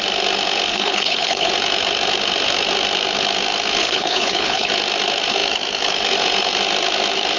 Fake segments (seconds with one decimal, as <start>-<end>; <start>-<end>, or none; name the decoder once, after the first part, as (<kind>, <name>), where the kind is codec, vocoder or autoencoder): 0.7-1.5 (codec, HILCodec); 3.8-4.7